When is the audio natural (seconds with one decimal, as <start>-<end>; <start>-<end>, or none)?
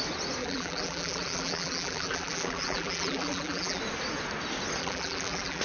0.0-0.4; 3.8-4.8